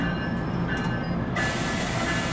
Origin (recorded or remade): recorded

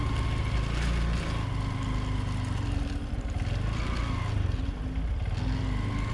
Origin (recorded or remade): recorded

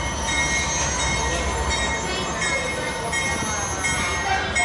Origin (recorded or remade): recorded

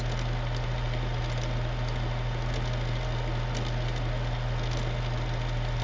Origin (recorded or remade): recorded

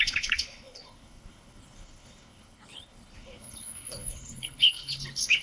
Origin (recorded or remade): remade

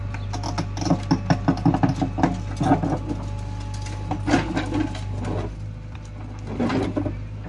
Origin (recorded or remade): recorded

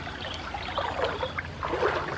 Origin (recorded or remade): recorded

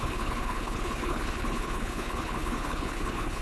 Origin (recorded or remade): remade